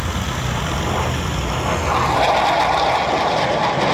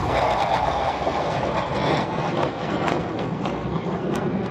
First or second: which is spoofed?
second